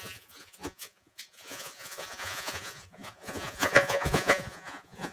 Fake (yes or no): yes